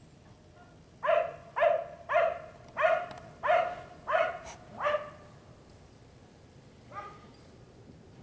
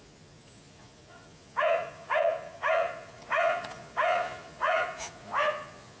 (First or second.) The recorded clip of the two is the first